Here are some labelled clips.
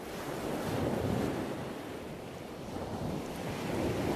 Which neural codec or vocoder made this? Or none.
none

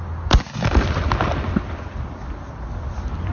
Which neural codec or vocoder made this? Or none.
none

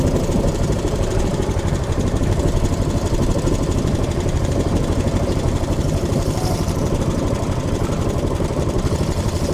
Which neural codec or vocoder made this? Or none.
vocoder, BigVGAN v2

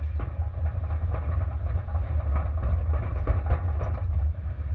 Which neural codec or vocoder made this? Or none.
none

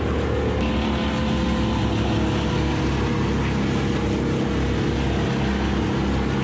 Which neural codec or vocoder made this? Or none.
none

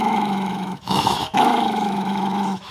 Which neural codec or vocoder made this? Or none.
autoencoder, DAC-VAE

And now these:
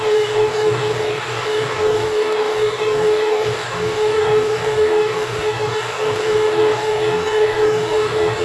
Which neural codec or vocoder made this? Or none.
codec, DAC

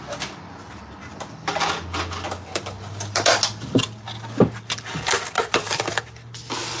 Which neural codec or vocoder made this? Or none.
none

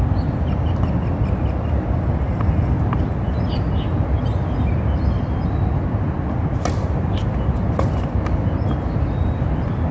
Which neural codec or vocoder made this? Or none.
none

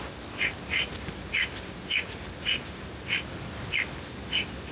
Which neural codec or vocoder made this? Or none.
none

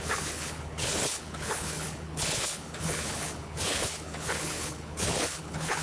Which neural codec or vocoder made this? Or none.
codec, HILCodec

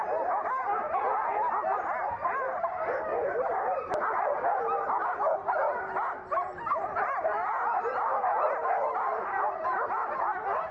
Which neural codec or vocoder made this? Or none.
none